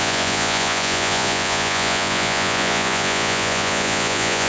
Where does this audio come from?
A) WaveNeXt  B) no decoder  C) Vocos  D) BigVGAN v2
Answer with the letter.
C